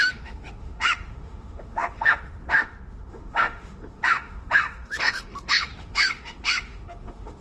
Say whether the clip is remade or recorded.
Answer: remade